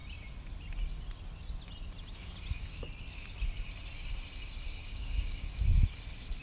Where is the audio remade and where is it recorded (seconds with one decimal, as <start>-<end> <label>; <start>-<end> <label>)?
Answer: 0.0-4.8 recorded; 4.8-5.7 remade; 5.7-6.4 recorded